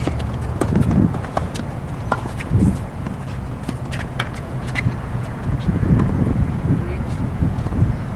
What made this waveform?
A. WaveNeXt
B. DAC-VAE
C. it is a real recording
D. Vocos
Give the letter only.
D